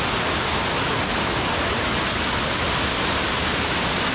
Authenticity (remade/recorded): recorded